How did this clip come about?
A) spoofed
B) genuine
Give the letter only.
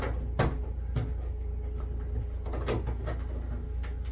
B